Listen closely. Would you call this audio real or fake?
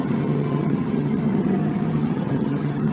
fake